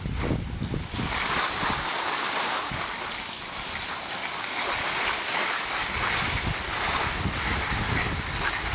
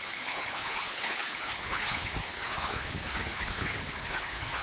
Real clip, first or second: first